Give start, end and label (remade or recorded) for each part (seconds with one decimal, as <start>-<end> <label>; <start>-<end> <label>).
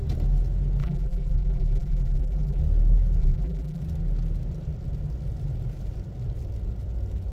0.0-0.8 recorded; 0.8-2.6 remade; 2.6-3.2 recorded; 3.2-3.8 remade; 3.8-7.3 recorded